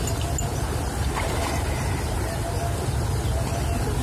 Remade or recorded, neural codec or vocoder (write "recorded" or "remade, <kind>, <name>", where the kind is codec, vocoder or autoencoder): recorded